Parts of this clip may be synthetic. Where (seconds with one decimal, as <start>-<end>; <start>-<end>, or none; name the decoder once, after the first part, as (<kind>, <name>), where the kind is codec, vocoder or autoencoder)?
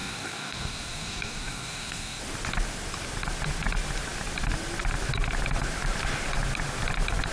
0.0-2.2 (codec, DAC)